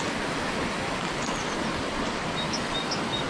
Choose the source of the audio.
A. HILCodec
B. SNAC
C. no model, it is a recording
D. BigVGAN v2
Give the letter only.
C